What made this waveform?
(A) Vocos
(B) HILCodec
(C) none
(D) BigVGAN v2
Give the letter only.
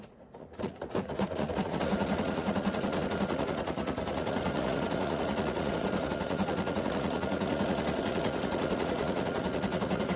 A